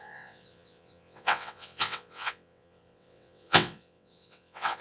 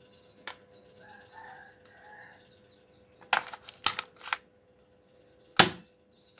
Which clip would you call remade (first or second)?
first